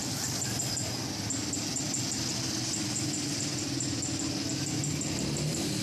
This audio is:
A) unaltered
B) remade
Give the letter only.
A